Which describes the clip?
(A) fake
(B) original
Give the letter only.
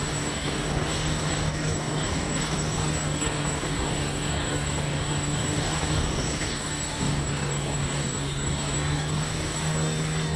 A